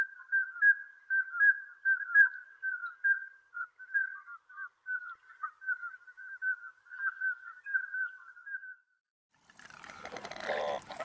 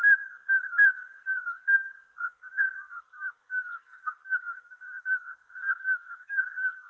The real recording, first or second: first